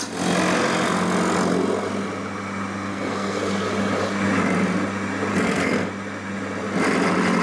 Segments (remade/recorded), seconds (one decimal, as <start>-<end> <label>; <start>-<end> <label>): 0.0-2.9 recorded; 2.9-3.5 remade; 3.5-5.3 recorded; 5.3-5.9 remade; 5.9-7.4 recorded